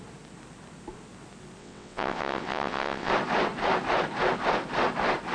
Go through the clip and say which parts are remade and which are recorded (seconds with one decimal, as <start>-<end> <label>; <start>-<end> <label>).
0.0-1.6 recorded; 1.6-3.1 remade; 3.1-5.3 recorded